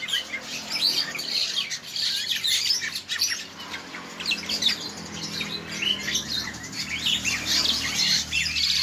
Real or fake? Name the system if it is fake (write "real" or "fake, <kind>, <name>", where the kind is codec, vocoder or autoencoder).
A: real